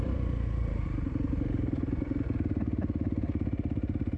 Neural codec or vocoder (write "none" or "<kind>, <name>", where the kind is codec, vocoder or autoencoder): vocoder, BigVGAN v2